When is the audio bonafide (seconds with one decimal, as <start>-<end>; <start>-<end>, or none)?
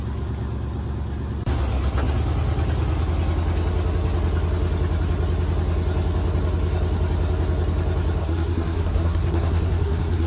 0.0-8.2